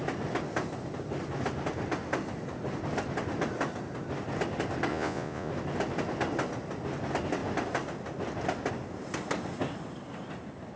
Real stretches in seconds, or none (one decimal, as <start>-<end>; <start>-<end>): 0.0-4.9; 5.5-10.8